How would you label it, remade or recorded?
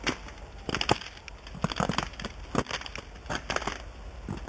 recorded